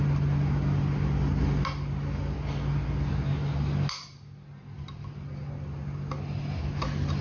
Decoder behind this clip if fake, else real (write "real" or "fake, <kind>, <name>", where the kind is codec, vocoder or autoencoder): real